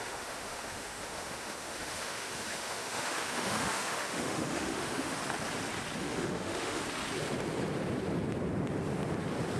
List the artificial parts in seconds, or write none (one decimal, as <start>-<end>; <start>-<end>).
0.0-5.2; 6.0-6.8